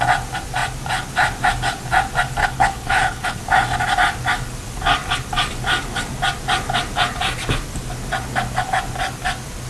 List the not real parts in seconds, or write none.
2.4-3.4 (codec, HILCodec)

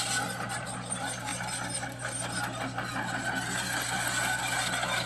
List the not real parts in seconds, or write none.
none

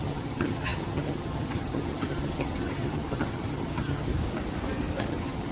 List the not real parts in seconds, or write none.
0.0-4.1 (vocoder, HiFi-GAN); 5.0-5.5

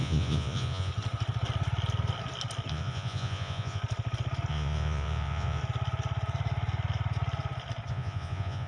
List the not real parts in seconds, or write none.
0.0-0.9 (vocoder, Vocos); 2.7-3.8; 4.5-5.6; 7.9-8.7

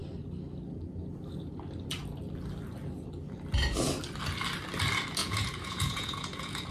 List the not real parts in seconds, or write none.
5.2-6.7 (vocoder, Vocos)

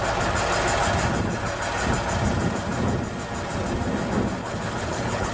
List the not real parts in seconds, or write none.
4.4-5.3 (codec, HILCodec)

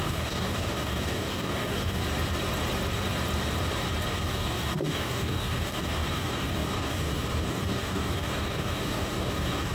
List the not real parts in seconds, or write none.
0.0-2.0 (codec, DAC); 4.1-9.7

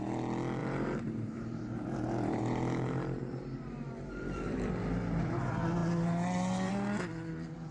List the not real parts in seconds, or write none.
0.6-4.7 (vocoder, BigVGAN v2)